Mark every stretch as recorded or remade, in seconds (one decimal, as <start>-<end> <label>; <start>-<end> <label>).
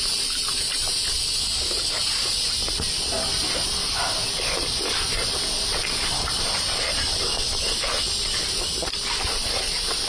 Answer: 0.0-1.2 remade; 1.2-3.7 recorded; 3.7-10.1 remade